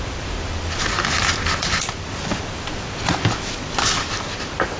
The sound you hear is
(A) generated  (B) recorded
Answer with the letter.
B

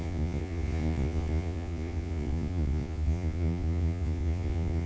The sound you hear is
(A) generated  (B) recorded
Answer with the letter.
A